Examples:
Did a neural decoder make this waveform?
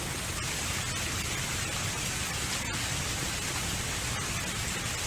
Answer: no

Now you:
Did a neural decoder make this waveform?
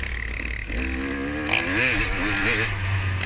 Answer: no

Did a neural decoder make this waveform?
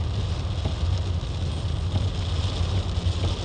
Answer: no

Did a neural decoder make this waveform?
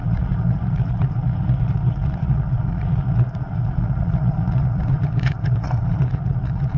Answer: yes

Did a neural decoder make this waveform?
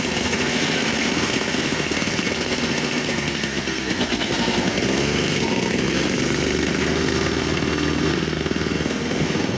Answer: yes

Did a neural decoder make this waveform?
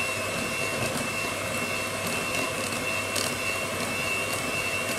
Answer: no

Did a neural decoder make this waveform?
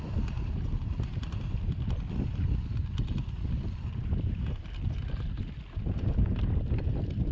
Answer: no